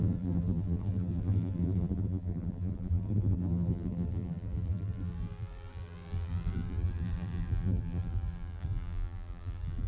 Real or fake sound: fake